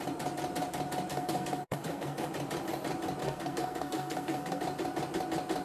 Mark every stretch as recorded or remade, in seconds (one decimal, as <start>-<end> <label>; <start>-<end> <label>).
0.0-1.1 recorded; 1.1-2.3 remade; 2.3-3.2 recorded; 3.2-4.6 remade; 4.6-5.6 recorded